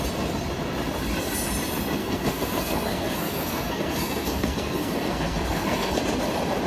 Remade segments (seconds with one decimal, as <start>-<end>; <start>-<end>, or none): 2.0-6.0